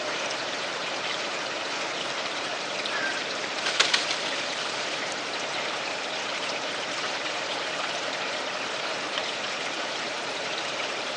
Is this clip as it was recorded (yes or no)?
no